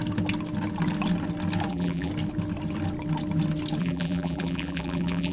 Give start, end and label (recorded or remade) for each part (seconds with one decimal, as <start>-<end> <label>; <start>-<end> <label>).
0.0-1.7 recorded; 1.7-2.1 remade; 2.1-3.8 recorded; 3.8-5.3 remade